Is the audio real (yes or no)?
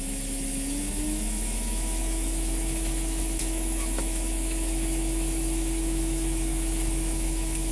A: no